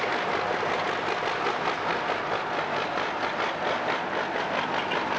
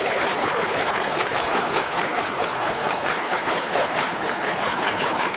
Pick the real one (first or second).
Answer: first